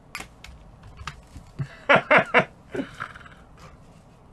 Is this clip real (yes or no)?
yes